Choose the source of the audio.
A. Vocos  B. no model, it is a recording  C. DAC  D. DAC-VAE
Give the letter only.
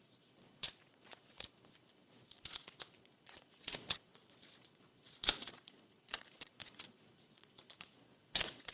A